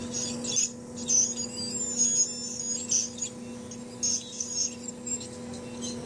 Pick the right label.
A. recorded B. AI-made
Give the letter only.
A